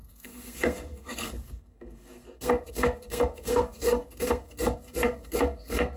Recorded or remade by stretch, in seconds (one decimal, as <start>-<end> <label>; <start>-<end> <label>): 0.0-6.0 remade